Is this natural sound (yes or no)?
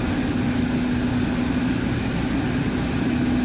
yes